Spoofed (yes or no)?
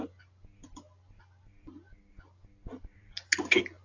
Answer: no